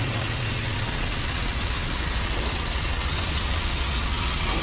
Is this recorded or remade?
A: remade